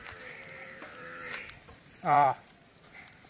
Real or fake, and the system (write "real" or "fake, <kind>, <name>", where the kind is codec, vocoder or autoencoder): fake, vocoder, BigVGAN v2